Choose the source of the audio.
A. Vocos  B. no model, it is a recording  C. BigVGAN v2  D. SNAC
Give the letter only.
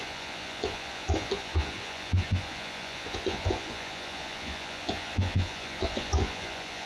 A